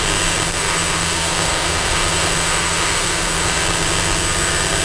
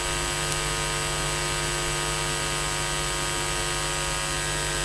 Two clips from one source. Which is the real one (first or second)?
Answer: second